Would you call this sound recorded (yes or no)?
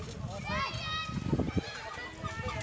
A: yes